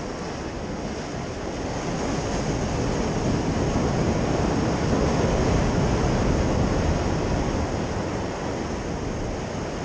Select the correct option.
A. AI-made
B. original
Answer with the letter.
B